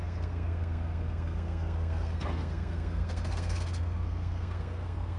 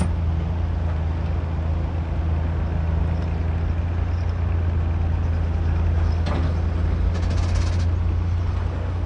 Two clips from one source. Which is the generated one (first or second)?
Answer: first